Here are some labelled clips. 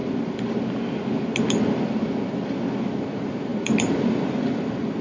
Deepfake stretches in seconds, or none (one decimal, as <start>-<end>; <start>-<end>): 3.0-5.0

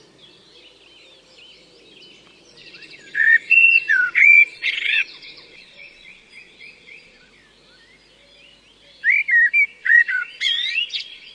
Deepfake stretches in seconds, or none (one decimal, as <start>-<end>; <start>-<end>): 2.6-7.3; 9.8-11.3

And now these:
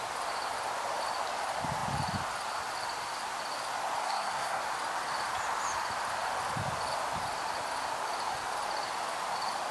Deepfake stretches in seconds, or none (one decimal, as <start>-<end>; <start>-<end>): 4.0-4.6

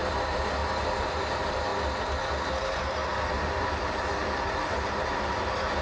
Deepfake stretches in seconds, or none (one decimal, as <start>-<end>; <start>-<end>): 0.0-1.7; 2.5-3.0; 3.6-5.8

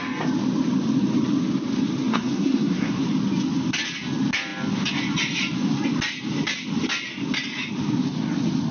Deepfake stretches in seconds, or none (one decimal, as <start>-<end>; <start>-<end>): 2.1-3.0